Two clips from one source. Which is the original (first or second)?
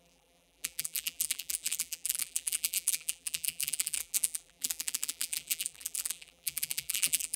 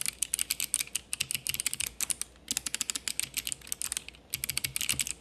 second